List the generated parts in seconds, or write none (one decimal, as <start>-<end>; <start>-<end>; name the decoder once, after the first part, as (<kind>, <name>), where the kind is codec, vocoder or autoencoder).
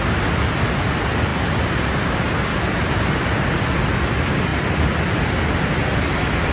none